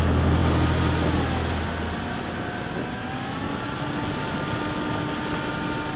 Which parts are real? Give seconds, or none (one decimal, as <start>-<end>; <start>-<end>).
0.0-6.0